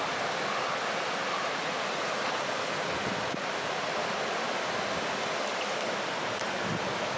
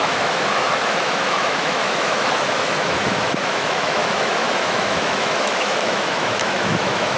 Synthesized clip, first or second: second